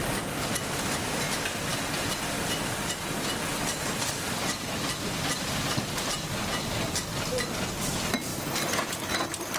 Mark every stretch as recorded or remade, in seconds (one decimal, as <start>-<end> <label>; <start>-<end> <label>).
0.0-9.6 recorded